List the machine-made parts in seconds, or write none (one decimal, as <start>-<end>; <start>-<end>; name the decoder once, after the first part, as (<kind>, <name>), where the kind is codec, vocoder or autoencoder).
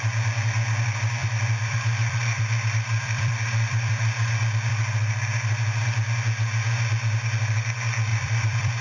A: 1.2-4.3 (vocoder, BigVGAN v2); 8.1-8.8